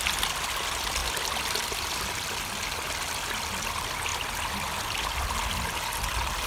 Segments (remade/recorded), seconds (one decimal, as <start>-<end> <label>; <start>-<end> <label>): 0.0-6.5 recorded